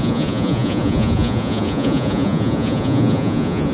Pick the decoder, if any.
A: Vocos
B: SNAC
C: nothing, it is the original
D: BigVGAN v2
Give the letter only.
A